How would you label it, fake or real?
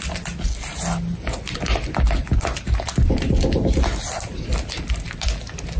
real